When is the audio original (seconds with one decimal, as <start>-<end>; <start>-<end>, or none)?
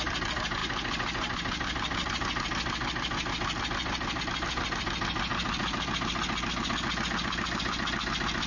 0.0-8.5